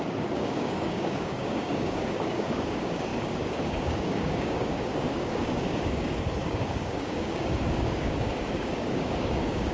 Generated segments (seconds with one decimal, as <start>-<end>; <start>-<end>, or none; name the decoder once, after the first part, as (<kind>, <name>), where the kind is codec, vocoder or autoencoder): 0.0-9.7 (codec, DAC)